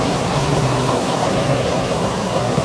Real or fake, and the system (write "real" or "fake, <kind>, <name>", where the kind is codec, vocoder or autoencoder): fake, codec, SNAC